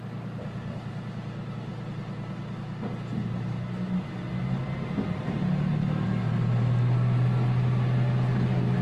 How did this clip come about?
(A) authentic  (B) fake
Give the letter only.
A